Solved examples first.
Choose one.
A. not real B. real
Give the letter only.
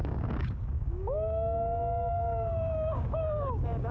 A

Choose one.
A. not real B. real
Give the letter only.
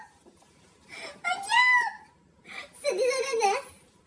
B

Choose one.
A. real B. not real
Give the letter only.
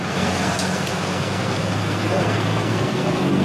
B